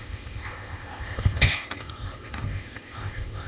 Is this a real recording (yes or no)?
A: no